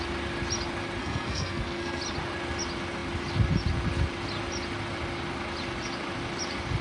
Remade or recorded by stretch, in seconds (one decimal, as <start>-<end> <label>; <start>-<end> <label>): 0.0-1.0 recorded; 1.0-2.0 remade; 2.0-6.8 recorded